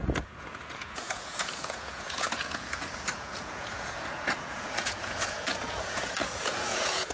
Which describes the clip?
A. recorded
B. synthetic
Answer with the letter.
B